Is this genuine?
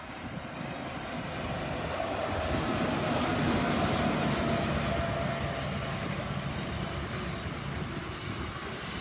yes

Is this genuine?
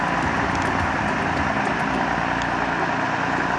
yes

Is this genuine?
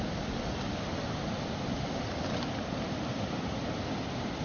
yes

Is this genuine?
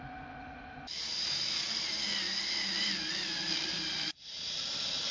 no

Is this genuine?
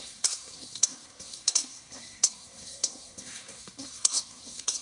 no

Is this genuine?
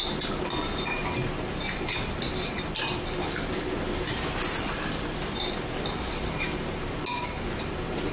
yes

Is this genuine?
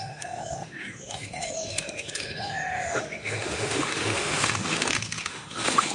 no